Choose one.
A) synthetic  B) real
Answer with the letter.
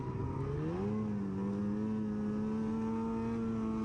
B